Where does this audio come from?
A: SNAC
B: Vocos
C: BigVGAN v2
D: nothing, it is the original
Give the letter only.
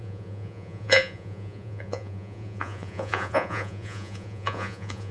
B